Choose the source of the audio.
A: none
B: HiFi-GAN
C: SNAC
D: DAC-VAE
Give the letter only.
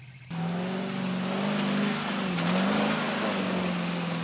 A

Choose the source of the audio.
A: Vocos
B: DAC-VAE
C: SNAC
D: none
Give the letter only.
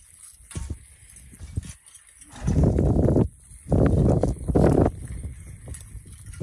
D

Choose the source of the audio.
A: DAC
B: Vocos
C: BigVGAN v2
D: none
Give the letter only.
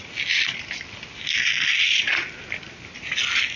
D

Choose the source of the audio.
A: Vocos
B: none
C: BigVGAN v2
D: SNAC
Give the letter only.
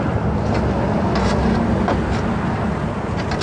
B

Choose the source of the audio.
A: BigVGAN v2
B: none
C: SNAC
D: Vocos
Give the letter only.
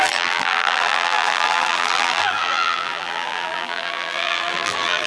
A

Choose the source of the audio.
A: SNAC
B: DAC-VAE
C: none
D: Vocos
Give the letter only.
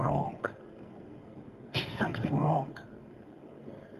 A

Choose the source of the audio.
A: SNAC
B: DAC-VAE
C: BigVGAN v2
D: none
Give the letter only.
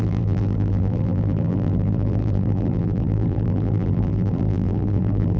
C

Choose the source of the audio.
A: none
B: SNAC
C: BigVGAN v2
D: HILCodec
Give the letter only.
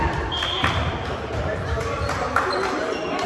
C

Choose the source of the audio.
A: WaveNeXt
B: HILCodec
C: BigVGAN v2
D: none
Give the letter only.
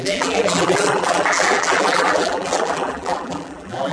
C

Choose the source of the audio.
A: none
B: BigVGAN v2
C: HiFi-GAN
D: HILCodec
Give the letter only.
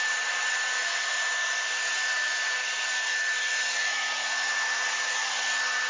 A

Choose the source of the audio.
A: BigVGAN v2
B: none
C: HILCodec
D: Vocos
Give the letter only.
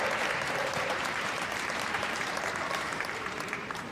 A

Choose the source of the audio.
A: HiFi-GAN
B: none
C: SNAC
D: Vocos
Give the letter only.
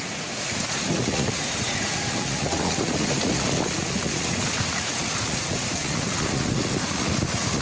D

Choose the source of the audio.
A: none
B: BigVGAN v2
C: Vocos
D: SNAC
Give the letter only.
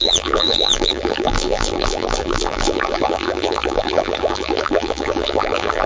B